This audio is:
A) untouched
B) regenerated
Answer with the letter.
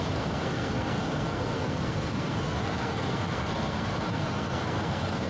B